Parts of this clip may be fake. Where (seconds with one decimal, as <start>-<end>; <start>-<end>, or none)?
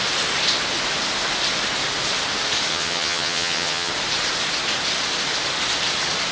2.7-3.9